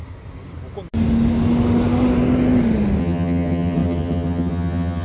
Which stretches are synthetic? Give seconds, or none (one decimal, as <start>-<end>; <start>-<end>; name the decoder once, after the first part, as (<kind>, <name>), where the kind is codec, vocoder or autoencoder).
3.0-5.0 (vocoder, HiFi-GAN)